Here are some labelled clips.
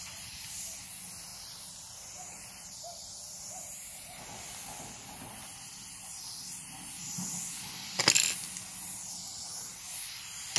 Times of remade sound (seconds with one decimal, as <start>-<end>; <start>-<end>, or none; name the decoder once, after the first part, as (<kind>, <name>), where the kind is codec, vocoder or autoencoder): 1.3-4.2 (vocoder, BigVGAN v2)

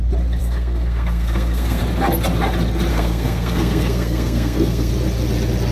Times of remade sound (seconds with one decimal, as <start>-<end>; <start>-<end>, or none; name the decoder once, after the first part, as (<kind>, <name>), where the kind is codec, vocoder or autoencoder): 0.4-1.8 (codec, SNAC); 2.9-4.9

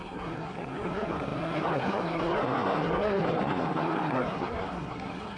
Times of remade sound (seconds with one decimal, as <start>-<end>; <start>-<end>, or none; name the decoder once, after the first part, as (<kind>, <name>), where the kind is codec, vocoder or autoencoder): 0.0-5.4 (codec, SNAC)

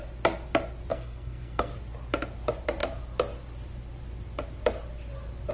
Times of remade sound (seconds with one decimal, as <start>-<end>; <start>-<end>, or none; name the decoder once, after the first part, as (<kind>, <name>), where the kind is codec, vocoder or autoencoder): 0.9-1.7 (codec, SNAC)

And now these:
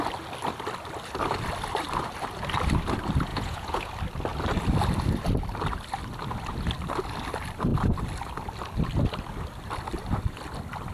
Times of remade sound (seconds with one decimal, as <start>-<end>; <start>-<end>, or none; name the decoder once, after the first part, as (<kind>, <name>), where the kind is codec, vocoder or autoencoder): 3.3-3.9 (vocoder, Vocos)